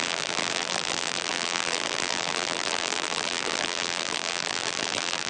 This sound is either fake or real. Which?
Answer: fake